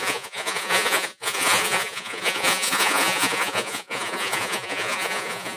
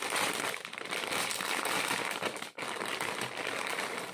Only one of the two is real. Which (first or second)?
second